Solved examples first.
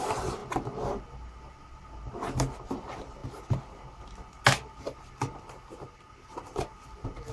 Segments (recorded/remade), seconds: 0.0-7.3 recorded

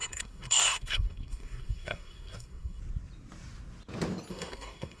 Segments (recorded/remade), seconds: 0.0-2.8 remade; 2.8-4.3 recorded; 4.3-5.0 remade

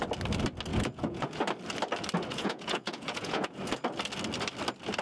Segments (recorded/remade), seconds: 0.0-0.7 recorded; 0.7-1.4 remade; 1.4-2.3 recorded; 2.3-3.6 remade; 3.6-5.0 recorded